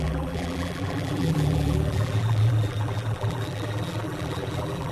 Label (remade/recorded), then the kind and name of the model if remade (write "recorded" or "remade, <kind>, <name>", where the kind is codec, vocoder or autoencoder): remade, vocoder, BigVGAN v2